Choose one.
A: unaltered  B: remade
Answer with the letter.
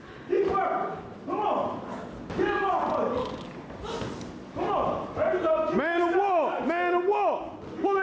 A